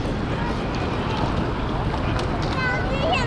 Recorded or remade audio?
recorded